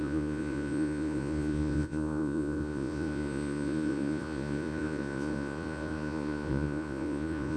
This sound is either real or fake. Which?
fake